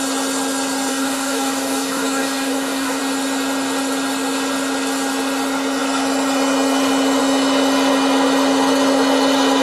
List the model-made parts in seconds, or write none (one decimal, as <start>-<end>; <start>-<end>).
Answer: 0.9-3.0